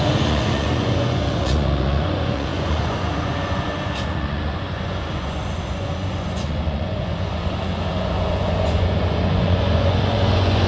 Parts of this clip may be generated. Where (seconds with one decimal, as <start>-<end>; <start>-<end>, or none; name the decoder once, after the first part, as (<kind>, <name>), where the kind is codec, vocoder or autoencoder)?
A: 0.0-10.7 (vocoder, Vocos)